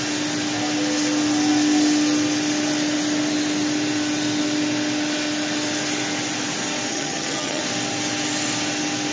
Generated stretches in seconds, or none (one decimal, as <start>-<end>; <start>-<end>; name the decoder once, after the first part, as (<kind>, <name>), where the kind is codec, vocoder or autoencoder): 6.9-7.6 (vocoder, HiFi-GAN)